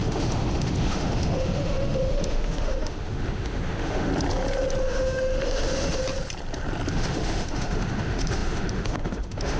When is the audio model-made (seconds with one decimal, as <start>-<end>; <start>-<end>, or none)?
0.0-4.1; 4.8-6.0; 6.9-9.6